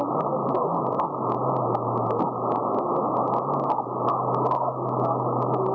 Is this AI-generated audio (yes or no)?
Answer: no